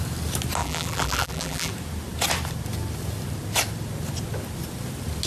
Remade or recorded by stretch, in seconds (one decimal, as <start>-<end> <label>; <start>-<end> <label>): 0.0-0.6 recorded; 0.6-1.7 remade; 1.7-5.3 recorded